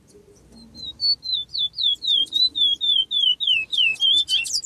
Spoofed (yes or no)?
no